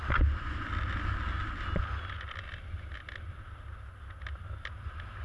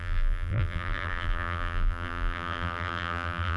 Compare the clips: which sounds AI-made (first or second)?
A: second